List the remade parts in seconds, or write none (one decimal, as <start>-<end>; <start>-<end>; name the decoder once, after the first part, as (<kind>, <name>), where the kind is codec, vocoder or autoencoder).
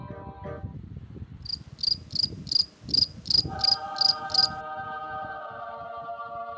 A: none